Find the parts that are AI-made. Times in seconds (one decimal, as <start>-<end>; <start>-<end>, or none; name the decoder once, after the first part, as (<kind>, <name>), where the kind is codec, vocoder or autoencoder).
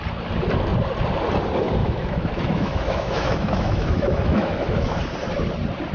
1.8-5.0 (autoencoder, DAC-VAE)